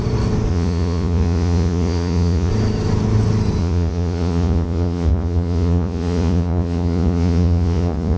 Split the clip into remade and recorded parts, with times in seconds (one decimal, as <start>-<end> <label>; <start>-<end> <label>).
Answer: 0.0-0.5 recorded; 0.5-2.5 remade; 2.5-3.6 recorded; 3.6-8.2 remade

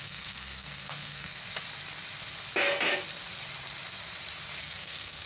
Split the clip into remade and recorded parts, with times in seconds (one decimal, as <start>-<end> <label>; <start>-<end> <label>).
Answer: 0.0-1.4 remade; 1.4-4.6 recorded; 4.6-5.3 remade

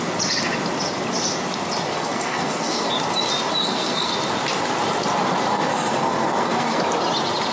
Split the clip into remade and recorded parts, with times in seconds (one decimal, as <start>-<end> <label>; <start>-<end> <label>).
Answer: 0.0-1.9 recorded; 1.9-2.9 remade; 2.9-3.6 recorded; 3.6-4.1 remade; 4.1-5.5 recorded; 5.5-6.8 remade; 6.8-7.5 recorded

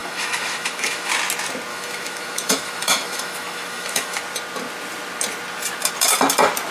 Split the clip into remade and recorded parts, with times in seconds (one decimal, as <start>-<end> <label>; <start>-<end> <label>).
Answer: 0.0-1.1 remade; 1.1-1.7 recorded; 1.7-4.2 remade; 4.2-6.7 recorded

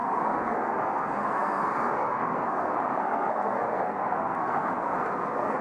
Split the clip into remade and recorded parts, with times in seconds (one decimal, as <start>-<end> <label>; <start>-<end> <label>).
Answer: 0.0-5.6 remade

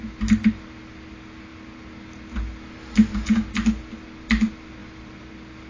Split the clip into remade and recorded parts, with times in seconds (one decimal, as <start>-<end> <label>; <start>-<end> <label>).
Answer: 0.0-4.8 recorded; 4.8-5.3 remade; 5.3-5.7 recorded

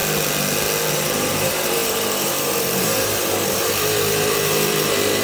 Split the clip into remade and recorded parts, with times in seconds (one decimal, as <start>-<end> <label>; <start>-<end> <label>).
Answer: 0.0-0.9 recorded; 0.9-5.2 remade